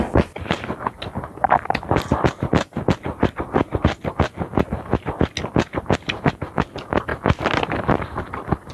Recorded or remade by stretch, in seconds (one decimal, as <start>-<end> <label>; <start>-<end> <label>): 0.0-8.7 recorded